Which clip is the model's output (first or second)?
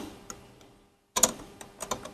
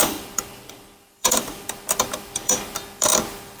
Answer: second